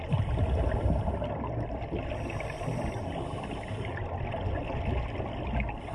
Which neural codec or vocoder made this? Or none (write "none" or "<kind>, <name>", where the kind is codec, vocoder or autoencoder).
none